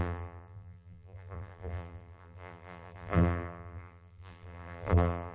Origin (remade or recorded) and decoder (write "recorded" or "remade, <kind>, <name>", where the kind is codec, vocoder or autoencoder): remade, vocoder, BigVGAN v2